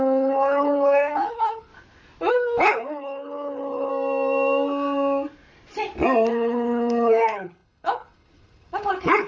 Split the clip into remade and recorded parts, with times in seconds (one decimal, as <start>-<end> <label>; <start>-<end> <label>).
0.0-1.7 remade; 1.7-2.3 recorded; 2.3-3.9 remade; 3.9-6.3 recorded; 6.3-9.3 remade